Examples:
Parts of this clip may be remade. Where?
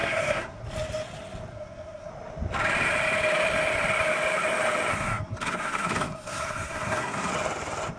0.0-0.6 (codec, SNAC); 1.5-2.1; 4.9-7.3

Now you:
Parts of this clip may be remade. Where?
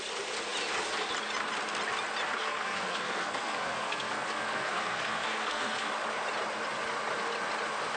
2.4-5.9 (codec, SNAC)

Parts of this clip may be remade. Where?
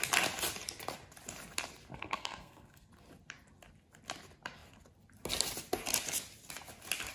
1.9-2.9 (codec, SNAC)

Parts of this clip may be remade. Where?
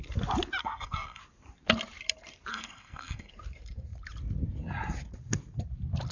0.6-1.2 (codec, SNAC); 2.5-3.3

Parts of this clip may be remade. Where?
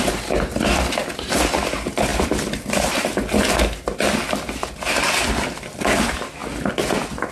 none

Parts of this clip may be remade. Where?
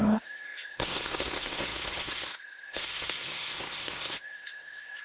0.0-5.0 (codec, SNAC)